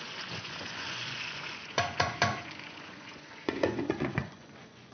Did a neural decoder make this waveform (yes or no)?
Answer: yes